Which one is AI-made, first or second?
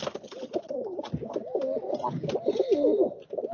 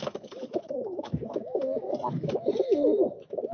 second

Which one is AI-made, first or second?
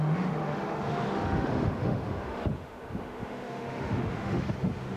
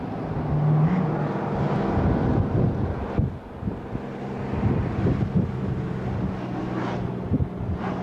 first